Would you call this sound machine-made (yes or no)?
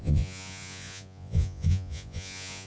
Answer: yes